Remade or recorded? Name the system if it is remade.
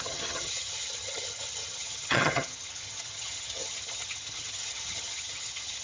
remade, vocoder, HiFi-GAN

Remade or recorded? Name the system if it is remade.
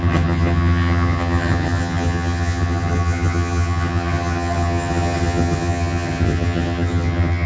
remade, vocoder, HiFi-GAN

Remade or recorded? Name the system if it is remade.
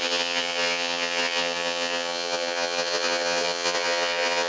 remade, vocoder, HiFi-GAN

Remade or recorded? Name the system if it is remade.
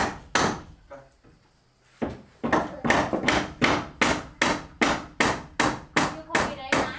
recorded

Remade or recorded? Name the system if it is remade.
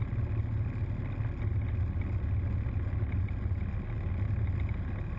recorded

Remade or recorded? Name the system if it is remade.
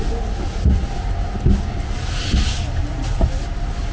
recorded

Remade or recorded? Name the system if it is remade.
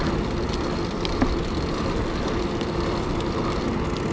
recorded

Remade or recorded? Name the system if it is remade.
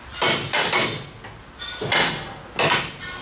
recorded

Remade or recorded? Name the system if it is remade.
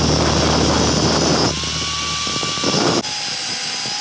recorded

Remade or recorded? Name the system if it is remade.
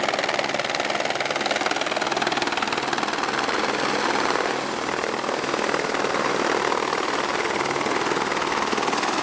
recorded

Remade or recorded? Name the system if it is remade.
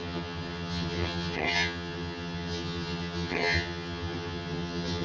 remade, vocoder, HiFi-GAN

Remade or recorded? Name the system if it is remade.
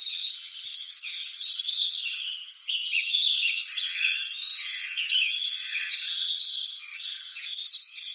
remade, vocoder, HiFi-GAN